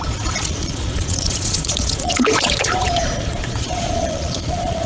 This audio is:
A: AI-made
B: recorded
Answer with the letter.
A